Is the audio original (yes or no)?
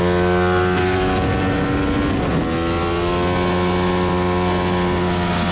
yes